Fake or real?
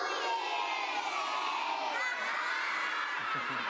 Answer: real